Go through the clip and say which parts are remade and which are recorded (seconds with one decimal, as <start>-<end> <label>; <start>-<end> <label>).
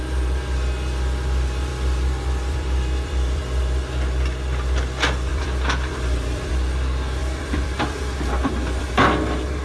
0.0-1.7 recorded; 1.7-3.4 remade; 3.4-5.3 recorded; 5.3-6.5 remade; 6.5-7.2 recorded; 7.2-8.9 remade; 8.9-9.6 recorded